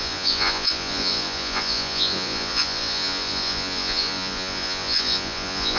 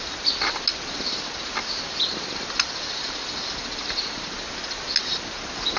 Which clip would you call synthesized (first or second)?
first